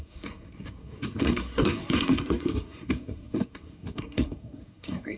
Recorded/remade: remade